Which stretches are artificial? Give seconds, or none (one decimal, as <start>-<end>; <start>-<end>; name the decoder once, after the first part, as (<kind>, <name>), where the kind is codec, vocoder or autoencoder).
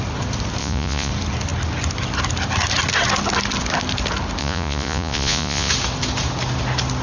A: 0.6-1.1 (vocoder, Vocos); 4.4-5.7